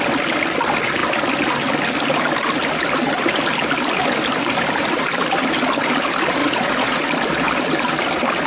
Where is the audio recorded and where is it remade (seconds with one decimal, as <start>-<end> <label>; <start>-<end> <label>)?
0.0-6.4 recorded; 6.4-7.1 remade; 7.1-8.5 recorded